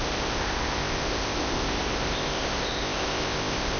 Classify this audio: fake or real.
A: fake